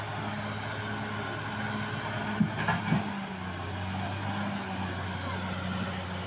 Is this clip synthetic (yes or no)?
no